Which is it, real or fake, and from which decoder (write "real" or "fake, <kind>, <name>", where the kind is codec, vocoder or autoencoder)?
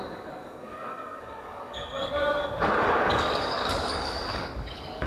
fake, codec, DAC